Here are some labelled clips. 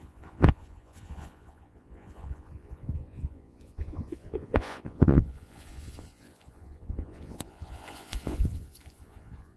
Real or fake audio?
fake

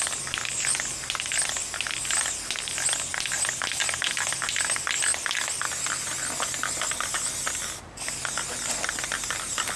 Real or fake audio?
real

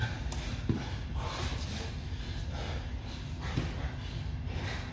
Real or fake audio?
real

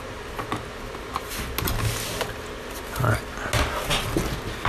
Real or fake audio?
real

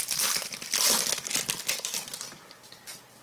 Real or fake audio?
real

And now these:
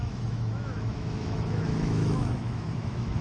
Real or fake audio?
fake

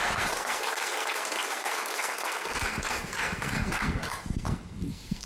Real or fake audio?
fake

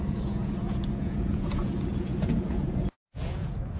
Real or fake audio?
fake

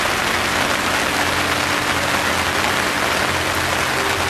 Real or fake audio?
real